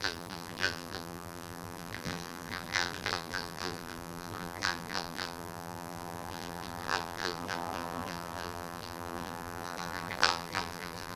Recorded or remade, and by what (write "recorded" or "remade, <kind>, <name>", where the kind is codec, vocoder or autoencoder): remade, vocoder, BigVGAN v2